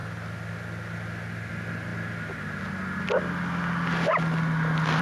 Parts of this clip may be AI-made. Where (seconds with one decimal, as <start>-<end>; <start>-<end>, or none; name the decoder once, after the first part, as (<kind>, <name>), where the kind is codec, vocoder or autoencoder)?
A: none